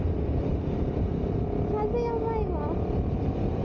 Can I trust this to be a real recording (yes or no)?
yes